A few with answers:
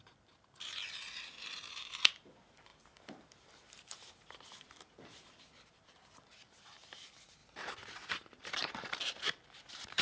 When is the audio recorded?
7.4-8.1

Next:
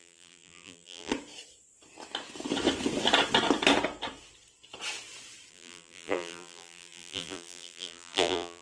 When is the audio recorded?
1.1-5.5

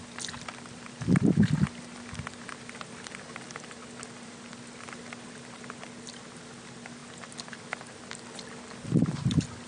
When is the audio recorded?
none

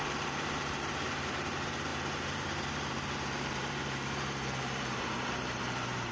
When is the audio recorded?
none

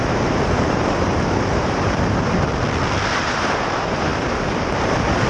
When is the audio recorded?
2.5-3.2